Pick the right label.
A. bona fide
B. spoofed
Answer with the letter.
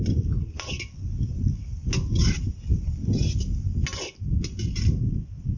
A